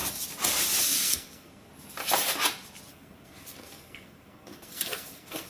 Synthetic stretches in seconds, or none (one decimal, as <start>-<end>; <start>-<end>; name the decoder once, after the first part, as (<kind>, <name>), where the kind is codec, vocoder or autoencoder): 0.8-1.7 (codec, SNAC); 2.9-5.5